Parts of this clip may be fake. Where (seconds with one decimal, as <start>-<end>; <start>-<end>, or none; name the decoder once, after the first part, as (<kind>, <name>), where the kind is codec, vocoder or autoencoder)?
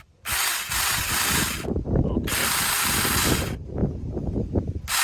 2.4-3.0 (vocoder, BigVGAN v2); 3.8-4.5